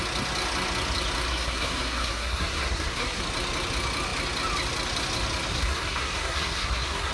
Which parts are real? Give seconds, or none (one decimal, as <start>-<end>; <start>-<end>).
0.0-1.3; 3.2-5.5